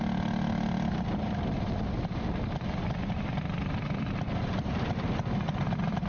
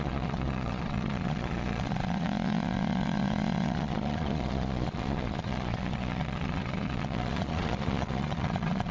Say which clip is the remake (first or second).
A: second